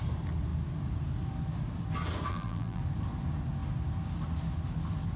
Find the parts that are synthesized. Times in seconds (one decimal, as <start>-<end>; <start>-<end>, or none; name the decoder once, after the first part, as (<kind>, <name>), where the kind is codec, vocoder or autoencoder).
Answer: 2.3-2.8 (vocoder, BigVGAN v2)